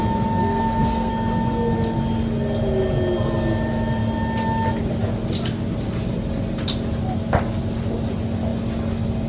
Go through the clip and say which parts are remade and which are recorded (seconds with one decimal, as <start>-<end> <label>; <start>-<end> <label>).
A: 0.0-0.4 recorded; 0.4-1.1 remade; 1.1-9.3 recorded